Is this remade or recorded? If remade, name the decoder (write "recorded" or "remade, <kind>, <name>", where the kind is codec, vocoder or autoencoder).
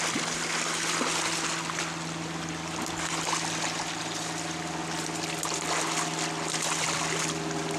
recorded